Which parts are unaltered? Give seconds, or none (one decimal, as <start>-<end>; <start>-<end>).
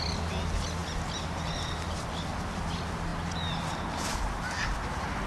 0.0-5.3